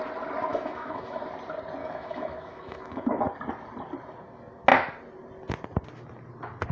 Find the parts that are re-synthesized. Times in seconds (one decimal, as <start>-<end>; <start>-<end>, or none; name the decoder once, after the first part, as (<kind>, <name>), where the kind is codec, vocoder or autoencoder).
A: 0.5-1.2 (autoencoder, DAC-VAE); 1.8-3.2